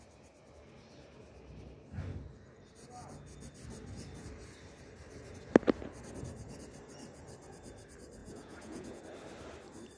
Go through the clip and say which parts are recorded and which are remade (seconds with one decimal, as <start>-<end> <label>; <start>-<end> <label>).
0.0-8.2 recorded; 8.2-9.0 remade; 9.0-10.0 recorded